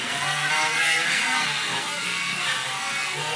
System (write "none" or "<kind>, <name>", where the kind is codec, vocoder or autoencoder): codec, SNAC